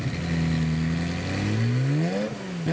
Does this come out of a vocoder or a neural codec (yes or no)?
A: no